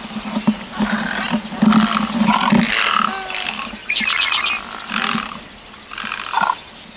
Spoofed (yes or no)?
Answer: no